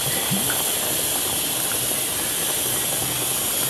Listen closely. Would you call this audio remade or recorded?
recorded